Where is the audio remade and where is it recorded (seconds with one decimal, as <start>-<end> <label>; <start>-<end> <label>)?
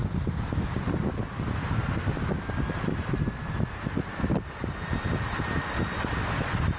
0.0-6.8 recorded